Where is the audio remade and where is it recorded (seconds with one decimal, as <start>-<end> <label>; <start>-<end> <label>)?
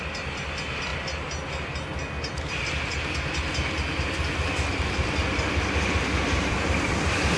0.0-4.7 recorded; 4.7-7.4 remade